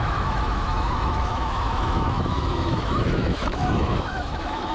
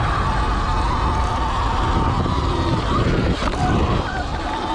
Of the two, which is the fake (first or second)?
first